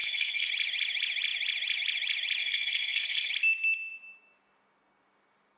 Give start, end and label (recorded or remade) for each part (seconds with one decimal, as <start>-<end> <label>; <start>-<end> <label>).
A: 0.0-0.5 remade; 0.5-2.4 recorded; 2.4-3.3 remade; 3.3-5.6 recorded